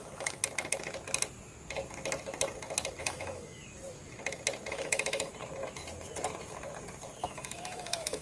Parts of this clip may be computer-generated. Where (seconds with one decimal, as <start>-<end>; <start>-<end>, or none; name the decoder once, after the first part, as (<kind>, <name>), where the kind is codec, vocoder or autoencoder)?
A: 0.0-0.4 (autoencoder, DAC-VAE); 3.0-3.6; 4.7-5.3; 7.2-8.2